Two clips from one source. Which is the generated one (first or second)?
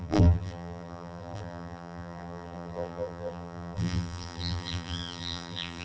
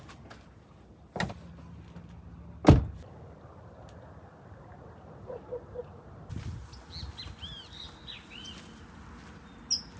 first